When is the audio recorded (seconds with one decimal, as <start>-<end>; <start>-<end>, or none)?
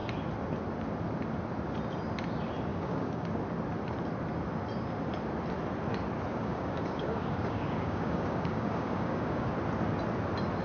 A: 0.0-2.7; 3.4-6.3; 9.5-10.6